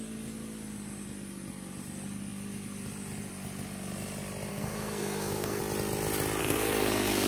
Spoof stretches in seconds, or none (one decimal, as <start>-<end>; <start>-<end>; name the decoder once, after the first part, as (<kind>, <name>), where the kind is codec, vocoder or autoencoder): 4.5-5.6 (codec, SNAC); 6.4-7.3